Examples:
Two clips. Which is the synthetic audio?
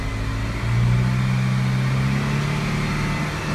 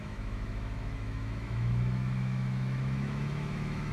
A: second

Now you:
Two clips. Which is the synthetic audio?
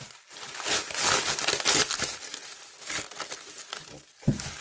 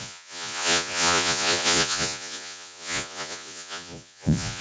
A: second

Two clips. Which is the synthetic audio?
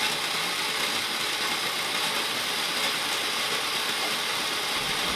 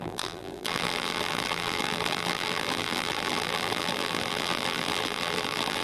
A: second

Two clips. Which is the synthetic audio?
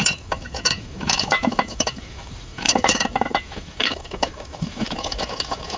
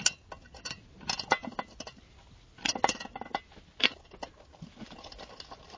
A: first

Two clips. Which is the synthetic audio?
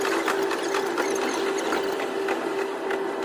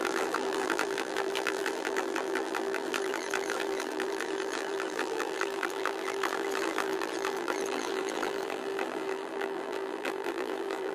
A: second